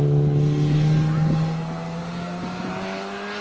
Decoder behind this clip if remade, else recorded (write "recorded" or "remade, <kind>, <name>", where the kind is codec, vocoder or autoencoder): recorded